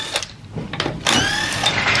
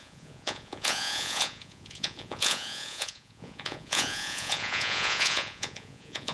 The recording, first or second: first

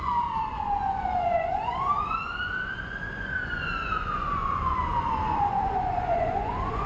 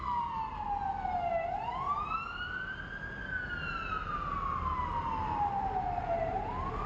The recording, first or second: second